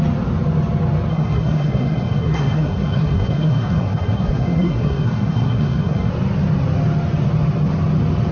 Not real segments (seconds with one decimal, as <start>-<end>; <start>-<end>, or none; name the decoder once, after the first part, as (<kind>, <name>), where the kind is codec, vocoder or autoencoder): 1.1-6.1 (codec, SNAC)